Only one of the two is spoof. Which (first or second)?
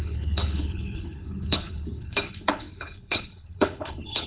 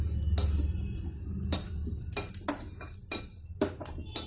first